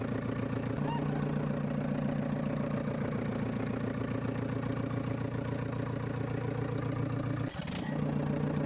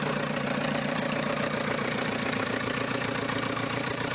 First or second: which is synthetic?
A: second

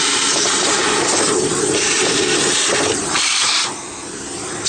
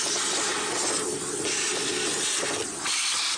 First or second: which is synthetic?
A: first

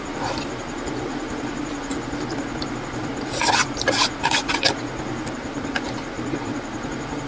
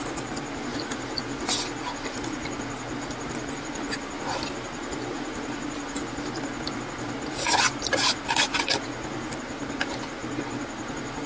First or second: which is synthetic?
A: first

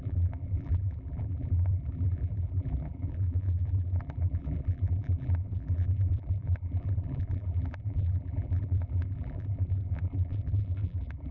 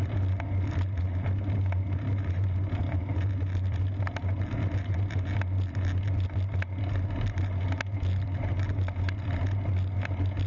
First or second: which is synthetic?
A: first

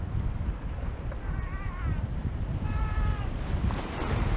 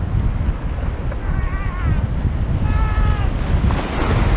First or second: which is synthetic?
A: first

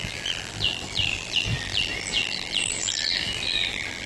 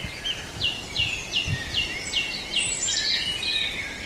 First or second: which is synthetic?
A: first